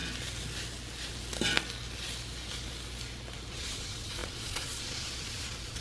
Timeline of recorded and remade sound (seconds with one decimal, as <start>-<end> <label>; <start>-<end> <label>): 0.0-3.5 recorded; 3.5-5.8 remade